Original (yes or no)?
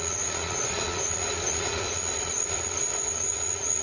no